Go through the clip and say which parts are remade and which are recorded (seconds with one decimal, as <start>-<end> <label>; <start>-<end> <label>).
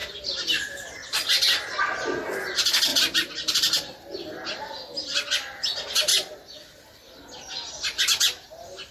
0.0-1.8 remade; 1.8-2.9 recorded; 2.9-4.6 remade; 4.6-8.9 recorded